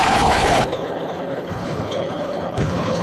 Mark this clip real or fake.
fake